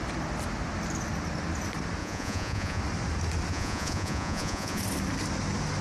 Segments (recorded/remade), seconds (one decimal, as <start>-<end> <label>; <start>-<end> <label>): 0.0-2.0 recorded; 2.0-2.8 remade; 2.8-3.5 recorded; 3.5-4.8 remade; 4.8-5.8 recorded